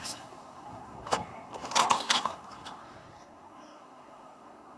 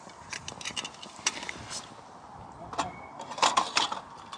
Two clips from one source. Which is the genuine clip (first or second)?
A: second